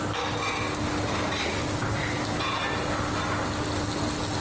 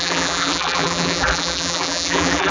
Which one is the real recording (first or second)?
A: first